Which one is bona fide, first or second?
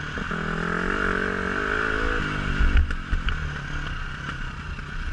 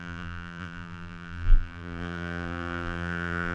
first